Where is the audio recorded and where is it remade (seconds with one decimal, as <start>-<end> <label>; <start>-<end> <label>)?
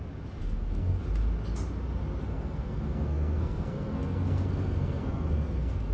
0.0-0.4 recorded; 0.4-1.0 remade; 1.0-2.3 recorded; 2.3-5.9 remade